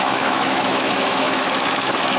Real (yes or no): no